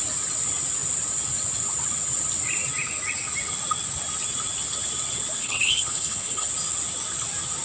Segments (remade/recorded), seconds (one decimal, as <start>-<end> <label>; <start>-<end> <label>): 0.0-5.4 recorded; 5.4-6.5 remade; 6.5-7.6 recorded